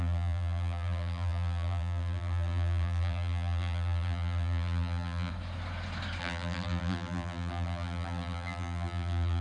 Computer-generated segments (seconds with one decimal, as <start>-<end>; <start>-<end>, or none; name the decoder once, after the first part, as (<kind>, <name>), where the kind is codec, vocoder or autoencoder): 0.0-5.3 (vocoder, BigVGAN v2); 6.2-9.4